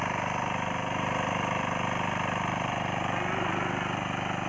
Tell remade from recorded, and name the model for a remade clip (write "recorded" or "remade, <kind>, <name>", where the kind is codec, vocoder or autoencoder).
recorded